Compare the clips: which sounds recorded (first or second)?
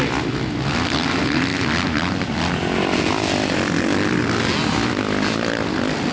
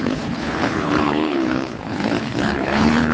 first